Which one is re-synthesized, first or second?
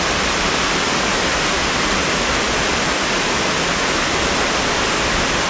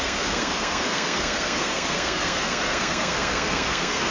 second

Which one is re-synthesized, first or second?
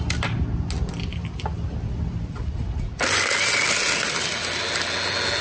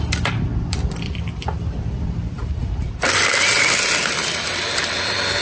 second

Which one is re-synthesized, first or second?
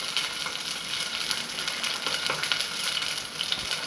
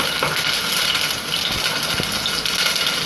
first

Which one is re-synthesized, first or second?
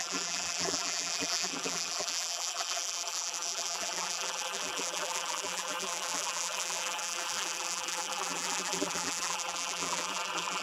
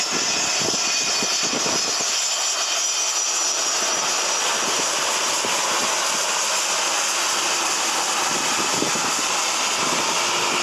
first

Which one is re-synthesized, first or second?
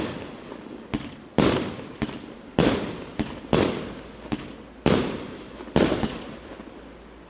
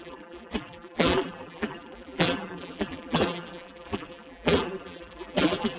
second